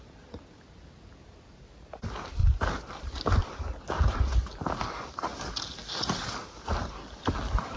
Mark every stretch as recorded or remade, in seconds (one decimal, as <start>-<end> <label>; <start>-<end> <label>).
0.0-7.8 recorded